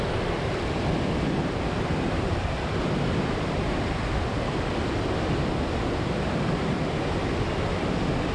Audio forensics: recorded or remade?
remade